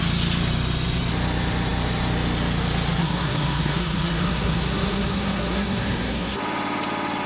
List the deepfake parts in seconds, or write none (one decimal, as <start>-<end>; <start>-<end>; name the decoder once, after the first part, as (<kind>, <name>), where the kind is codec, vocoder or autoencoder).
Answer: 3.0-6.4 (codec, SNAC)